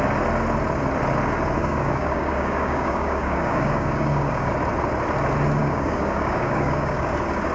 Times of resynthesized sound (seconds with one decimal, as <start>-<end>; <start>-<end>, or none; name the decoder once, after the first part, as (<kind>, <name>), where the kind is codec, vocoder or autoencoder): 1.6-4.5 (codec, DAC); 5.6-7.1